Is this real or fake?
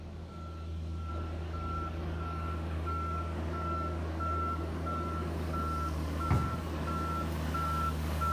fake